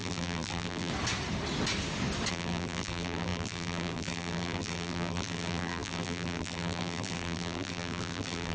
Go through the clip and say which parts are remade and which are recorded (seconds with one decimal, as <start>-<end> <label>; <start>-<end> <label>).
0.0-0.9 remade; 0.9-2.3 recorded; 2.3-8.5 remade